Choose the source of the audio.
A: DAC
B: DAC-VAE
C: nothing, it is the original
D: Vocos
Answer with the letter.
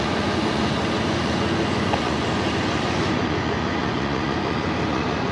D